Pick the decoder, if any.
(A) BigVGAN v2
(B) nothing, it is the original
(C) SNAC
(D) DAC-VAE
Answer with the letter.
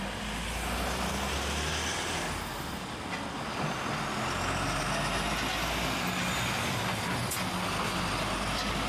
B